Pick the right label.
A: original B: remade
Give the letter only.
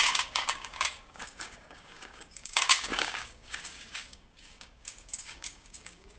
B